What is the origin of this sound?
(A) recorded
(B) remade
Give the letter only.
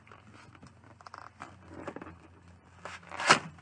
A